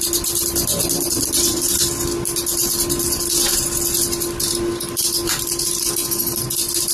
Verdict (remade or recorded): recorded